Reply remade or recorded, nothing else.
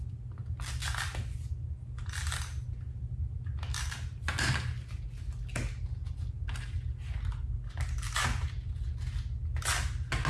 recorded